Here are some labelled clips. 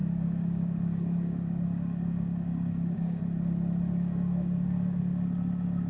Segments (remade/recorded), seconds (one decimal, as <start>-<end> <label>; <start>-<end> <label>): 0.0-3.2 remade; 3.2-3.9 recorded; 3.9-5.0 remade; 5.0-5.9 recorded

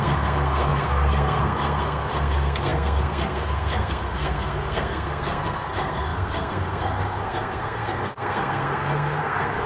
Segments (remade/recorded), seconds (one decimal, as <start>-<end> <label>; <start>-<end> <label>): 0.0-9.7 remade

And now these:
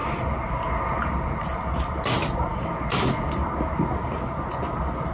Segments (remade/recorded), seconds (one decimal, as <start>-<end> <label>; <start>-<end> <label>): 0.0-5.1 recorded